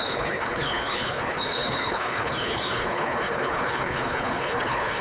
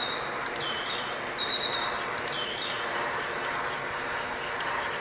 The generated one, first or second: first